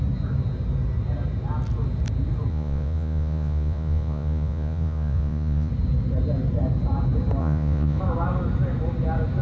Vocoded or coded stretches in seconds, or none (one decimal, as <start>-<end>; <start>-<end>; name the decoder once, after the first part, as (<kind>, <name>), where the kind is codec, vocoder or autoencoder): 2.5-5.7 (vocoder, Vocos); 7.4-8.0